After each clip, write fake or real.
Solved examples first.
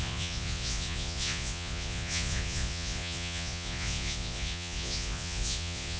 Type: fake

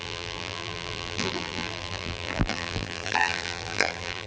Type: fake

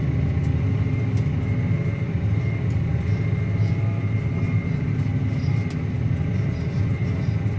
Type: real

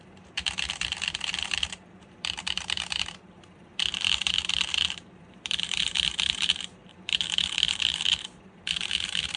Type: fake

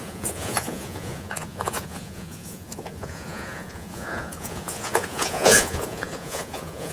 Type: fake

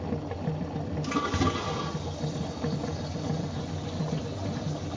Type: real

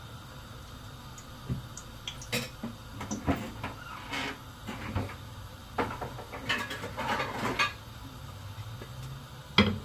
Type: real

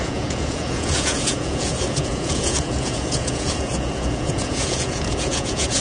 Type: fake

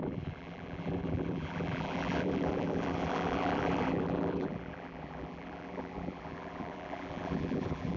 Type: fake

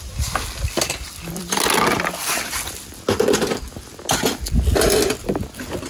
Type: real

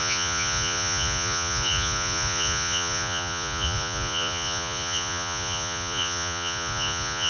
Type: fake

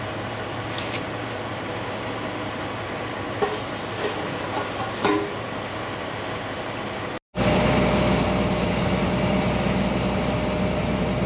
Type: real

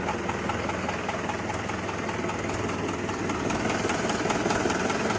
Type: real